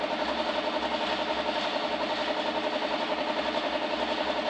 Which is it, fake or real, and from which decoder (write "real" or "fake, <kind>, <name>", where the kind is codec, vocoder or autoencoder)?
real